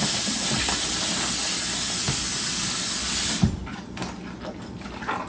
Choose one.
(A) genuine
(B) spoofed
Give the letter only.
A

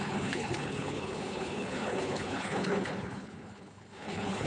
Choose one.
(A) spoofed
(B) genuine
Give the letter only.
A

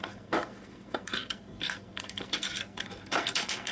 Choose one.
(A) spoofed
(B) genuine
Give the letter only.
A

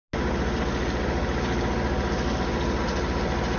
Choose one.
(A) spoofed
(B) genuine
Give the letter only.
B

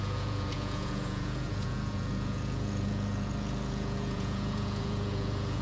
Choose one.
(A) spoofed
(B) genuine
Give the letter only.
A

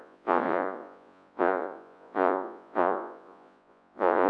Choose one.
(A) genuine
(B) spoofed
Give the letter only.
B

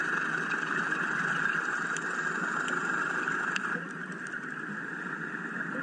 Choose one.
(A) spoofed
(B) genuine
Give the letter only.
B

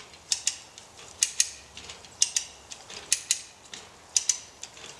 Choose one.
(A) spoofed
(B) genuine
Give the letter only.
B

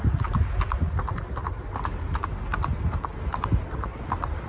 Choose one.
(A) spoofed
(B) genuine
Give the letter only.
B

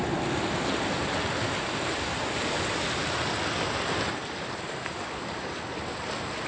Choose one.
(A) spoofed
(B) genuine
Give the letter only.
B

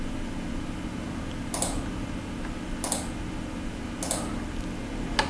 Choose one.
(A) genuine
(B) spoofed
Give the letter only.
A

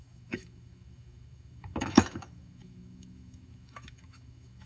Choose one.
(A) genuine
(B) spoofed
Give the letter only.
B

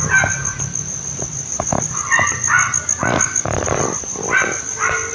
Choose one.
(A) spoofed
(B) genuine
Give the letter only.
B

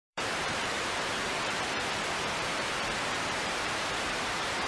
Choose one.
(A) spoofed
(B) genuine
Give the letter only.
A